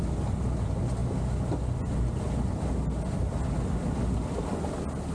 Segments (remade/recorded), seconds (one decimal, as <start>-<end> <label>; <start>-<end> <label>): 0.0-5.1 recorded